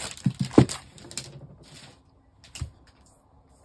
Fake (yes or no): no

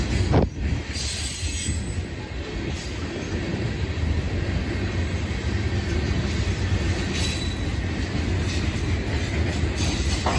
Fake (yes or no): no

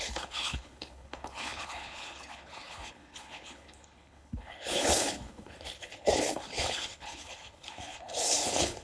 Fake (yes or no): yes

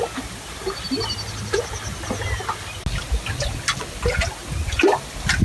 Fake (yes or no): no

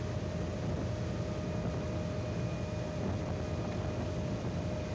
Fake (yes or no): no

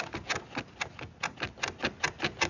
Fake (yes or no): no